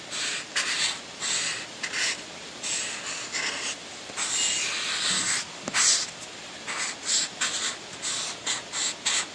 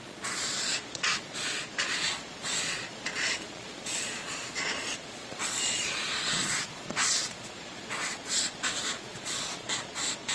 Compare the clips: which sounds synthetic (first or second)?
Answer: second